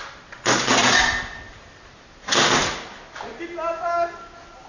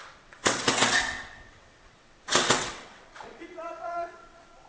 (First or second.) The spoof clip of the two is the second